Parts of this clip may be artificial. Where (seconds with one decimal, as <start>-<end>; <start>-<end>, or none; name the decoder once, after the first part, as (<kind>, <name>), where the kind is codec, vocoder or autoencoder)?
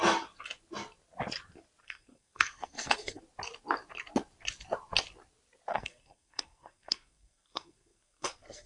1.8-3.2 (codec, SNAC); 5.7-8.7